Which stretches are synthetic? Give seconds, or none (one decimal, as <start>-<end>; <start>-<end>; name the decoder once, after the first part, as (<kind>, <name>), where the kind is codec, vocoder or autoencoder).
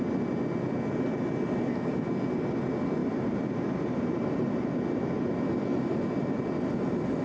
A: 3.0-5.3 (vocoder, BigVGAN v2)